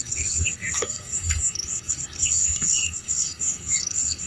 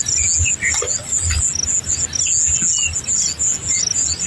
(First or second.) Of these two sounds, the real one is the second